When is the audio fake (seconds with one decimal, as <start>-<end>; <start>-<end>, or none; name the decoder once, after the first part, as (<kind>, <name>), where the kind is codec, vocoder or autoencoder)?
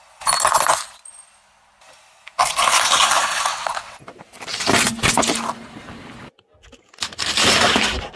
3.5-4.0 (vocoder, WaveNeXt)